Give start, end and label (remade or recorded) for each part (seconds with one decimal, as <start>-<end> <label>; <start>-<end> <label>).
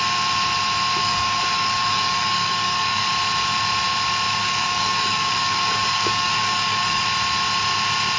0.0-1.0 recorded; 1.0-3.1 remade; 3.1-4.4 recorded; 4.4-7.0 remade; 7.0-8.2 recorded